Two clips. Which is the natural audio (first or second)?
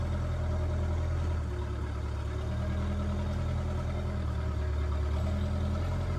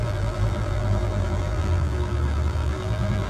first